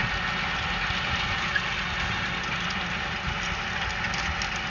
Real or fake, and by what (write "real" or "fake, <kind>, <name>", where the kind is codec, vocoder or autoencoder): real